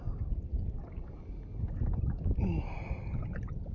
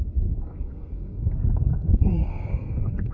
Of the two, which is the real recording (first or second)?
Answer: first